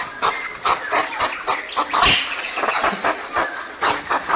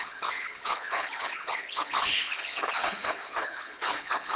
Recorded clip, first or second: first